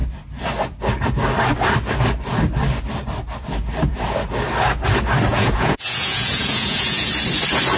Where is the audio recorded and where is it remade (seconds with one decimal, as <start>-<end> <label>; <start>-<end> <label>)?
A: 0.0-5.3 recorded; 5.3-7.1 remade; 7.1-7.8 recorded